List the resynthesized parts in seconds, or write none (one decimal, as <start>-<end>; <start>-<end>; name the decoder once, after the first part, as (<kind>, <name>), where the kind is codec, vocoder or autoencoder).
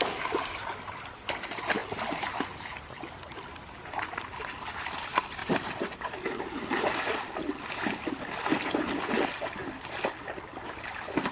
none